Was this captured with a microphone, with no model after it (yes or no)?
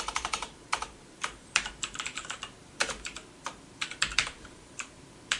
no